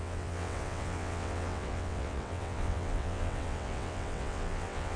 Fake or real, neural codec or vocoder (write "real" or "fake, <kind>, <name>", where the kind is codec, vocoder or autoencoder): fake, vocoder, WaveNeXt